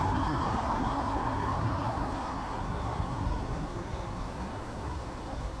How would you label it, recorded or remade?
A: remade